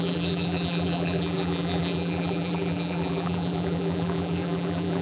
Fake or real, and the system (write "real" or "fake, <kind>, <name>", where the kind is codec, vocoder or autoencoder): fake, vocoder, BigVGAN v2